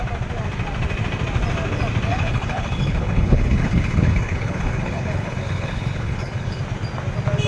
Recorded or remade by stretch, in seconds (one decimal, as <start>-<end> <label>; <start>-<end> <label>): 0.0-2.1 recorded; 2.1-6.6 remade; 6.6-7.5 recorded